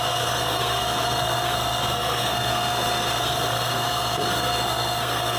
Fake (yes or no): yes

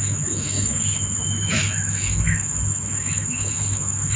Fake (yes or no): yes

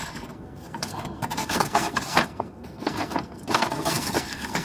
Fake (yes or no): yes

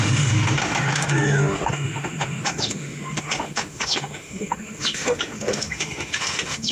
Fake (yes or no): yes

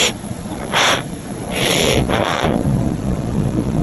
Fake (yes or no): yes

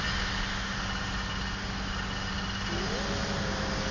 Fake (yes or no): no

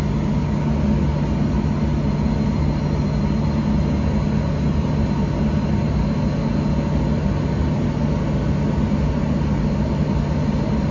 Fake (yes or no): no